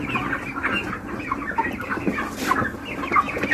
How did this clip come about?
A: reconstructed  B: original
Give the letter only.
B